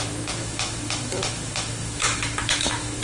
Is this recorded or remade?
remade